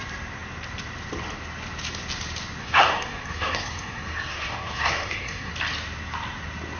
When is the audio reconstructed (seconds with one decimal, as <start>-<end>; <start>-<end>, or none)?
2.6-5.5